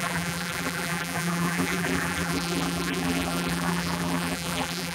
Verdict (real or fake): fake